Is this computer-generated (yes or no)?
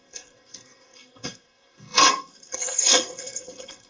yes